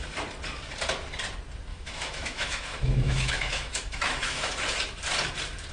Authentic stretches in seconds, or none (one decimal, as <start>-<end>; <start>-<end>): 0.0-1.7; 4.5-5.7